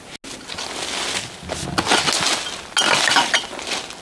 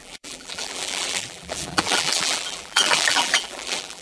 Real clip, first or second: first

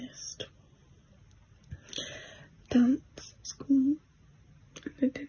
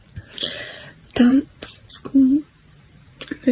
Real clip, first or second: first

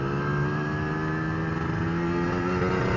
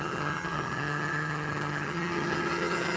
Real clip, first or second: first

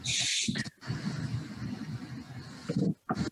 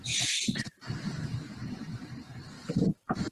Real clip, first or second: first